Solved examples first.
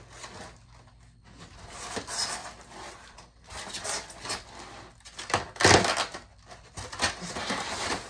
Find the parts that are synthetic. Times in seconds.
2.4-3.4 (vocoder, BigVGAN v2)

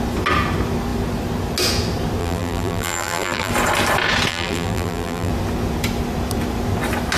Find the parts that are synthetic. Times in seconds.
2.2-3.5 (vocoder, BigVGAN v2); 4.3-5.3

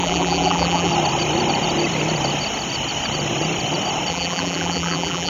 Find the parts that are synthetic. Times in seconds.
0.0-0.9 (vocoder, BigVGAN v2); 4.1-5.3

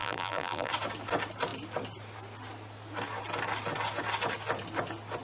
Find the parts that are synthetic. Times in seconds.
0.0-0.7 (vocoder, BigVGAN v2)

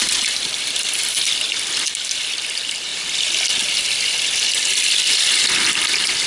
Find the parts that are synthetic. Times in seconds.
0.0-6.3 (vocoder, BigVGAN v2)